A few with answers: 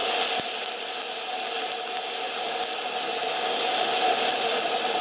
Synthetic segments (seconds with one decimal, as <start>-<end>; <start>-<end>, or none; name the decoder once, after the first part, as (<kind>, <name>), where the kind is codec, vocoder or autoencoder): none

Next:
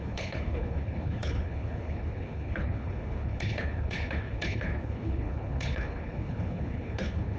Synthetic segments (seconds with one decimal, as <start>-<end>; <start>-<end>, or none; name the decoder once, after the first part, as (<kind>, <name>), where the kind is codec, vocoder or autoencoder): 0.0-7.4 (codec, HILCodec)

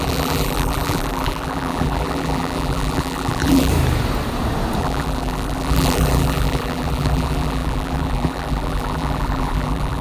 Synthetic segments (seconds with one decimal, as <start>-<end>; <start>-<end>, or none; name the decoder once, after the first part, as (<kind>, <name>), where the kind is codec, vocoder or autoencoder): 0.0-3.7 (vocoder, BigVGAN v2); 4.8-10.0